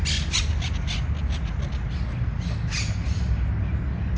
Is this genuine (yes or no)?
yes